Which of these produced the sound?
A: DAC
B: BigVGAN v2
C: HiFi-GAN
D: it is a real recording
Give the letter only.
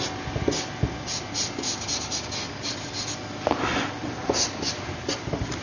D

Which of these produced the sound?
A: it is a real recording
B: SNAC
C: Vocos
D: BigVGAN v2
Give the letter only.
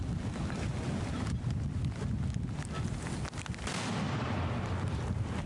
A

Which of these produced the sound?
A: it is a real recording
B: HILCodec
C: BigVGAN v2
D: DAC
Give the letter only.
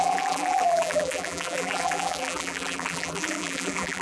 C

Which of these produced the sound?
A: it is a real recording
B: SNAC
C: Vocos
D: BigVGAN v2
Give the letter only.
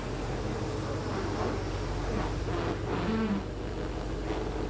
A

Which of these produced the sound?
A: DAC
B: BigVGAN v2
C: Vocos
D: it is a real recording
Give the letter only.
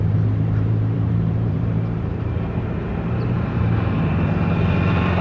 B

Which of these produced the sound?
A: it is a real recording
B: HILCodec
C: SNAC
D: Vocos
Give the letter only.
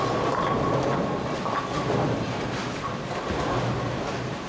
A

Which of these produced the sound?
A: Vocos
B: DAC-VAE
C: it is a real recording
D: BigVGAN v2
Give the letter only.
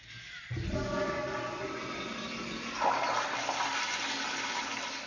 C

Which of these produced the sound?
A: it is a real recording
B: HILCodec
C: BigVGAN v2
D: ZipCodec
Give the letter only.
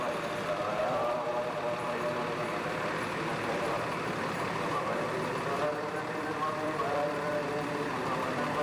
C